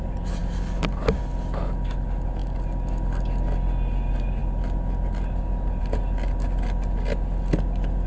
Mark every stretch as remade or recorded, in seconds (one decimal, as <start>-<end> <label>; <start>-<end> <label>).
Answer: 0.0-8.1 recorded